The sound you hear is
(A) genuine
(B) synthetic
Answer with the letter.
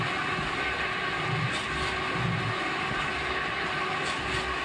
A